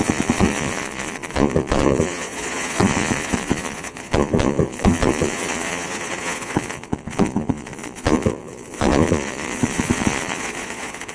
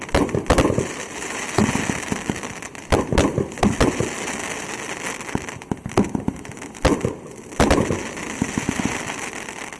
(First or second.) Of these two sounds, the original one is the second